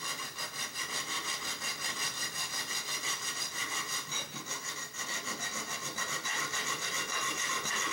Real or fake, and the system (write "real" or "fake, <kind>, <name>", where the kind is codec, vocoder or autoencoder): real